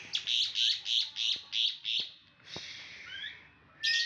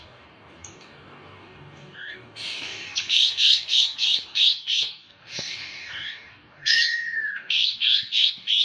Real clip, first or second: first